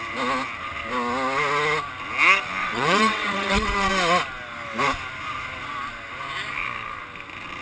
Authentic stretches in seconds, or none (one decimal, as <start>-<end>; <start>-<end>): 0.0-2.6; 3.9-7.6